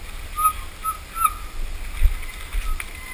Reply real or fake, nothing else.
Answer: real